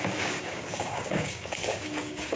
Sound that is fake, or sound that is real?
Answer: fake